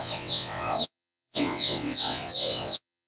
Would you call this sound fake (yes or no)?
yes